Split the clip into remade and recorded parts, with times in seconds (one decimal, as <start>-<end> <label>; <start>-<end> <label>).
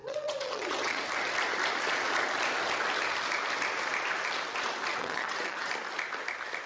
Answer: 0.0-1.0 remade; 1.0-4.9 recorded; 4.9-5.7 remade; 5.7-6.7 recorded